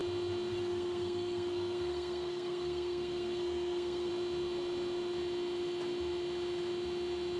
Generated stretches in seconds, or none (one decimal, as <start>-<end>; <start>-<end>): 0.5-4.1